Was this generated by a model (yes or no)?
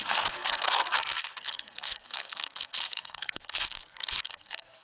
yes